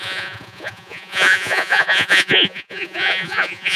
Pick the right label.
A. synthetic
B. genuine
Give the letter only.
A